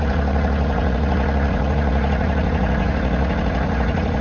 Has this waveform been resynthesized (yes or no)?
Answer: yes